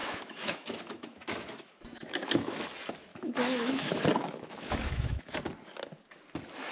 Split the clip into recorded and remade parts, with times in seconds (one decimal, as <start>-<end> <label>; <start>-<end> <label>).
0.0-2.6 remade; 2.6-3.1 recorded; 3.1-5.4 remade; 5.4-6.7 recorded